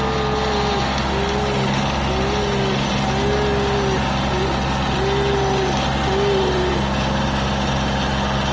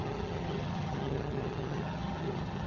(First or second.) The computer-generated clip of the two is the second